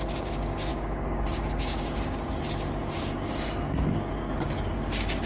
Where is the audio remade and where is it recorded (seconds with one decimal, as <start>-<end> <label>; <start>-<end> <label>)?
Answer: 0.0-5.3 remade